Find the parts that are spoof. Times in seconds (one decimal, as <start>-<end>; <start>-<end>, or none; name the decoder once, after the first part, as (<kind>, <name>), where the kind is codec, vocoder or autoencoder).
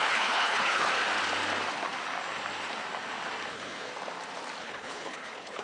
0.0-0.9 (codec, HILCodec); 3.5-3.9; 4.6-5.6